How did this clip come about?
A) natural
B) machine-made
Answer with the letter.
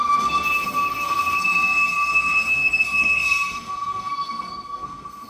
B